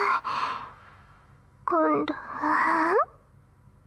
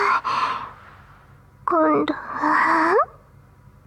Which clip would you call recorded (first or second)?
second